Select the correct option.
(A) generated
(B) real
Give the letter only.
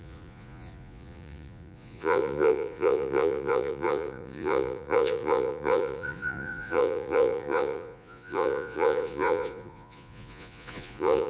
A